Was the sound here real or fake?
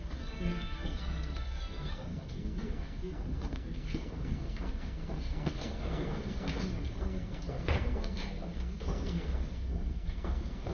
fake